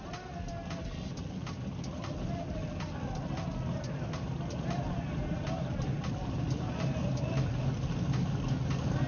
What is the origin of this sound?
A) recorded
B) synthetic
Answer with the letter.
A